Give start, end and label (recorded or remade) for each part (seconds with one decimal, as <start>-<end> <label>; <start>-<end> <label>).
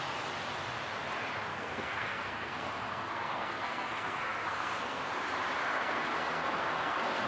0.0-1.5 recorded; 1.5-5.0 remade; 5.0-5.6 recorded; 5.6-7.3 remade